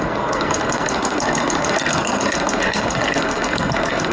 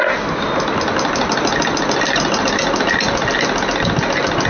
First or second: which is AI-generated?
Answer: first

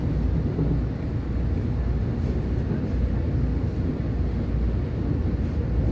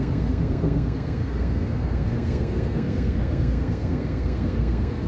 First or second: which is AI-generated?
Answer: second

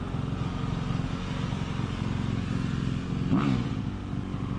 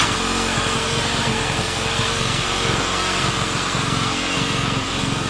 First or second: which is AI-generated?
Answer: second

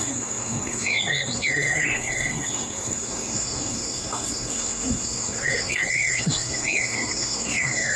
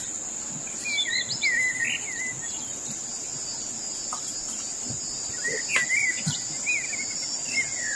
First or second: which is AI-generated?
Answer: first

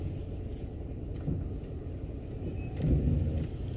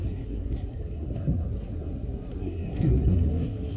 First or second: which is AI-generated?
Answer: second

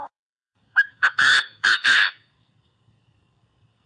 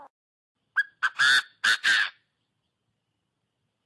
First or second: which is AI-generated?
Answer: first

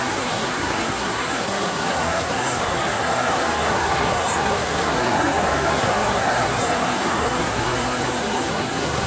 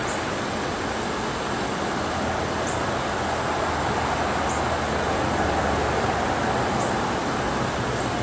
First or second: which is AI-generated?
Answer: first